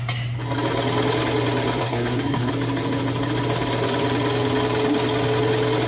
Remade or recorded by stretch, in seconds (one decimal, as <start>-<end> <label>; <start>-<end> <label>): 0.0-1.8 recorded; 1.8-2.5 remade; 2.5-5.9 recorded